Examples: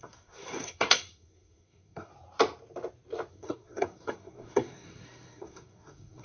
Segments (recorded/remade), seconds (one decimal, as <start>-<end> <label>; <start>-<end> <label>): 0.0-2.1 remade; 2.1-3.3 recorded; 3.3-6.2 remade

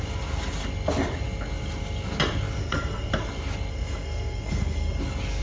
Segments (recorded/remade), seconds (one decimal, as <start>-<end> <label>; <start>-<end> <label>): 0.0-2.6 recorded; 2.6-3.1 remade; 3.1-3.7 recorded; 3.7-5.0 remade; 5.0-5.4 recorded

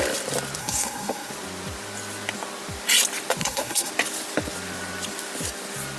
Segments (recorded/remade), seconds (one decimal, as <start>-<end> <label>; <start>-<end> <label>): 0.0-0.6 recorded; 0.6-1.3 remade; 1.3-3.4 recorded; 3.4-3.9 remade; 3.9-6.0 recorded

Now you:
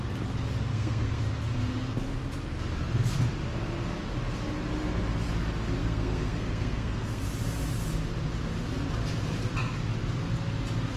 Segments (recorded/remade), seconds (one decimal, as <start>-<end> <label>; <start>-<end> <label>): 0.0-0.7 recorded; 0.7-1.2 remade; 1.2-5.8 recorded; 5.8-7.2 remade; 7.2-11.0 recorded